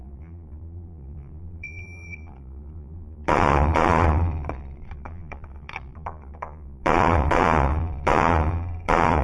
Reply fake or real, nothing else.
fake